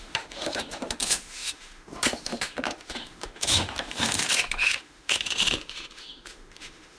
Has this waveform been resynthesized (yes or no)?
yes